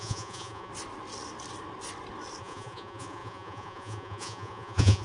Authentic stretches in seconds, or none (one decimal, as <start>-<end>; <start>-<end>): 0.7-2.4